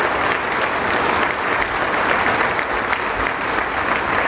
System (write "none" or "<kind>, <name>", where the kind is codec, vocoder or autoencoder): none